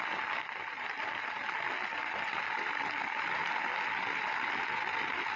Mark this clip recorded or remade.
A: recorded